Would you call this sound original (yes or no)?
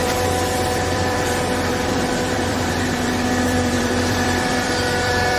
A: no